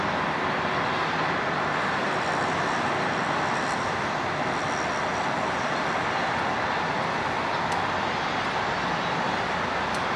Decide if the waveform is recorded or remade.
recorded